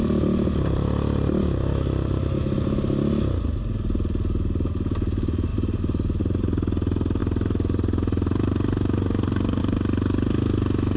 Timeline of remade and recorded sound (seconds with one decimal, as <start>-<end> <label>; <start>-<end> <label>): 0.0-5.5 recorded; 5.5-6.2 remade; 6.2-11.0 recorded